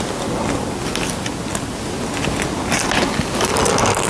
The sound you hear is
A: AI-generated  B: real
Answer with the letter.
B